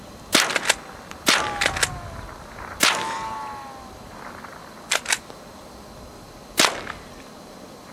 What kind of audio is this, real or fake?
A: real